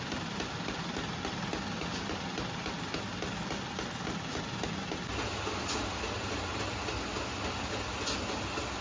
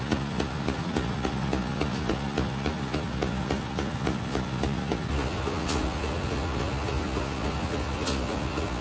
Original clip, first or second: first